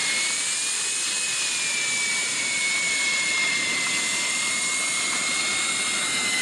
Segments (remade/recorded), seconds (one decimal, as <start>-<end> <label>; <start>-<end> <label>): 0.0-2.2 recorded; 2.2-5.4 remade; 5.4-6.4 recorded